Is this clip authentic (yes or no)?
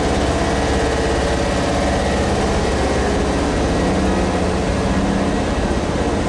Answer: yes